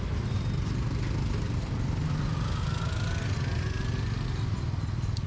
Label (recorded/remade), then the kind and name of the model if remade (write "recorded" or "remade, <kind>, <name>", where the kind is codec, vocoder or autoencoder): recorded